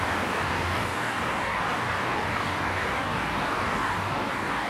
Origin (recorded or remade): remade